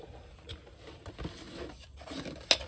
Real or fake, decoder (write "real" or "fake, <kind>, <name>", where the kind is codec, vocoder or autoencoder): real